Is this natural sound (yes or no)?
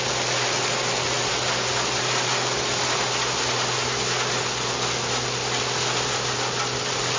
yes